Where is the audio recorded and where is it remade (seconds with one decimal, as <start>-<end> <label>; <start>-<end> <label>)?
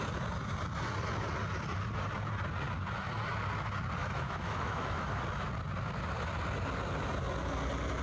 0.0-4.0 recorded; 4.0-5.2 remade; 5.2-8.0 recorded